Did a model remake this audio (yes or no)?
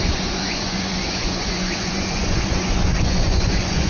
yes